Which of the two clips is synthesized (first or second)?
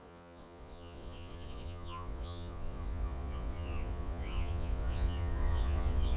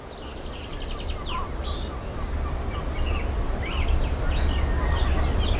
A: first